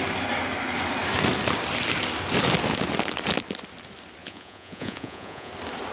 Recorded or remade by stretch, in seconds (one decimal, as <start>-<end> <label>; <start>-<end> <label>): 0.0-4.2 recorded; 4.2-5.5 remade; 5.5-5.9 recorded